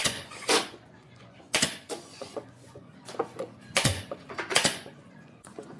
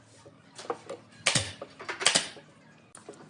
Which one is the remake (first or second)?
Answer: first